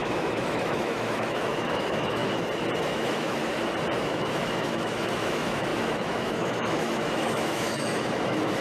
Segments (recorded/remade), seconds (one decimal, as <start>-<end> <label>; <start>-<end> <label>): 0.0-2.2 remade; 2.2-2.8 recorded; 2.8-3.4 remade; 3.4-4.0 recorded; 4.0-8.6 remade